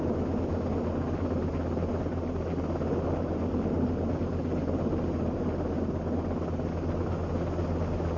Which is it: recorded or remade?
recorded